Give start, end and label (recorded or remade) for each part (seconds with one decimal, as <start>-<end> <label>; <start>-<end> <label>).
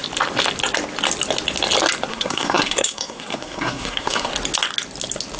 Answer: 0.0-2.1 recorded; 2.1-4.3 remade; 4.3-5.4 recorded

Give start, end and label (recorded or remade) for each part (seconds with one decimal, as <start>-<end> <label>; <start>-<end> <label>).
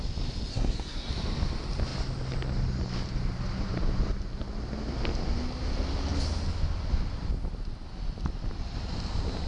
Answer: 0.0-0.5 recorded; 0.5-1.1 remade; 1.1-9.5 recorded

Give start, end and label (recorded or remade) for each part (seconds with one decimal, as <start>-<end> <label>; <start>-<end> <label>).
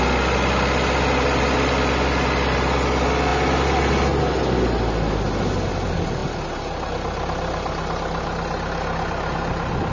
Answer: 0.0-9.9 recorded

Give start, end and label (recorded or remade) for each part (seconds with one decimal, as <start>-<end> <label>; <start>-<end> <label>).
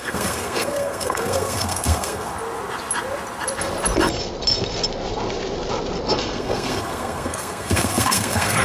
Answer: 0.0-2.3 remade; 2.3-6.1 recorded; 6.1-8.6 remade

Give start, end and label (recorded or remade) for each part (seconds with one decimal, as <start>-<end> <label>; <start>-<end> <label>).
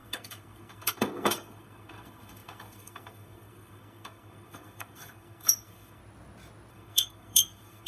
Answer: 0.0-6.0 remade; 6.0-6.7 recorded; 6.7-7.9 remade